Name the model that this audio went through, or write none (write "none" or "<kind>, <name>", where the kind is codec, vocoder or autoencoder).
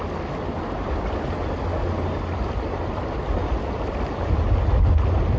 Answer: none